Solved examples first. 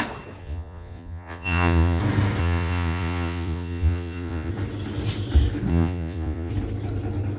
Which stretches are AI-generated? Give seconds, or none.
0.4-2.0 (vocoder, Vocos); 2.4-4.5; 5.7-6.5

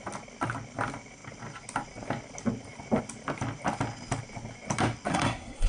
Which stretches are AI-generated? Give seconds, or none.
5.1-5.7 (codec, SNAC)

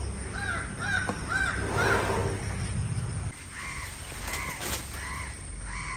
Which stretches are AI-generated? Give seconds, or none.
none

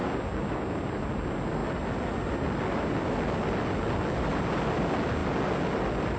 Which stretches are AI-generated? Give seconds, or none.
none

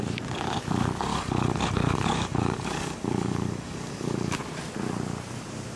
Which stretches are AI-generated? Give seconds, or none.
1.1-4.4 (codec, DAC)